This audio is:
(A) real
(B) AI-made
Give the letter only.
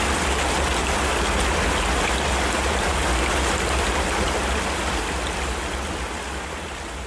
A